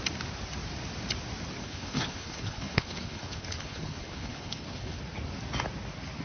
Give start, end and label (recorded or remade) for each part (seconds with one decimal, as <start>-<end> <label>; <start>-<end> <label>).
0.0-1.6 recorded; 1.6-5.0 remade; 5.0-6.2 recorded